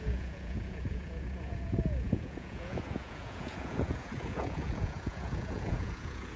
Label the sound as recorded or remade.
remade